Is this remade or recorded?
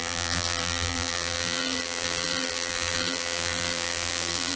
remade